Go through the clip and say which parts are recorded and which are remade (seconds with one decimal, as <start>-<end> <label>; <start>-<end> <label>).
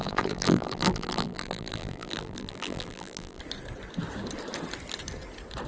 0.0-3.4 remade; 3.4-5.7 recorded